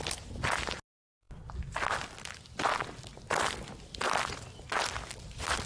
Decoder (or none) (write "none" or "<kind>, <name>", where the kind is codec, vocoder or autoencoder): none